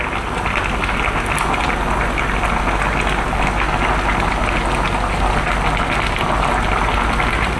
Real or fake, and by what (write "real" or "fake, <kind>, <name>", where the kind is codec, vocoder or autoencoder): real